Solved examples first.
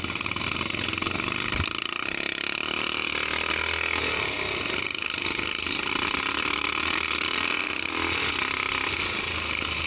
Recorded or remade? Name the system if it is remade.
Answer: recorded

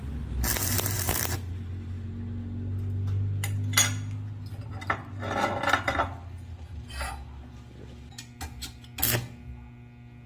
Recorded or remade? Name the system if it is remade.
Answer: recorded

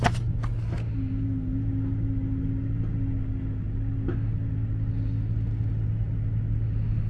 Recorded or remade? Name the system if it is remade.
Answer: recorded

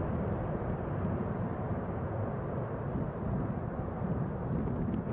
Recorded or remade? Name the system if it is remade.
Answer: recorded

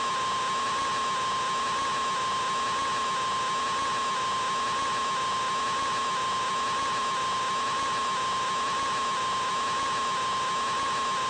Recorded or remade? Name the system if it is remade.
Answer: remade, vocoder, BigVGAN v2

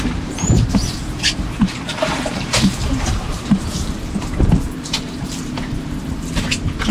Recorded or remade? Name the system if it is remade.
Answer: remade, vocoder, BigVGAN v2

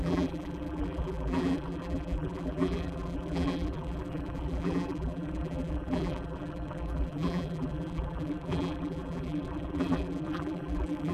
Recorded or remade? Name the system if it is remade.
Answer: remade, vocoder, BigVGAN v2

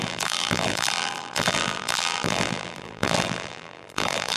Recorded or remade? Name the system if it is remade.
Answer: remade, vocoder, BigVGAN v2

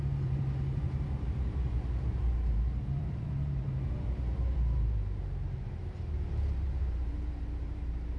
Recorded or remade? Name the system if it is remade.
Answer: remade, vocoder, BigVGAN v2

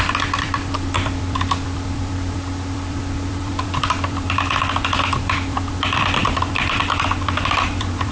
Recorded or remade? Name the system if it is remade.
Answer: remade, vocoder, BigVGAN v2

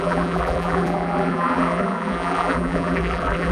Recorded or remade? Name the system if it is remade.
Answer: remade, vocoder, BigVGAN v2